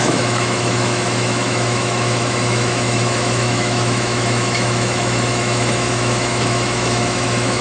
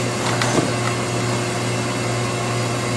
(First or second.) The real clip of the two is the second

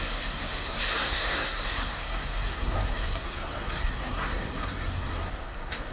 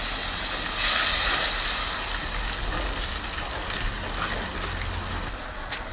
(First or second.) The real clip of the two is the second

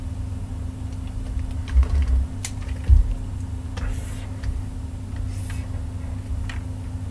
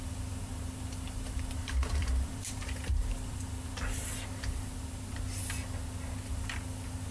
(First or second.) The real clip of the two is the first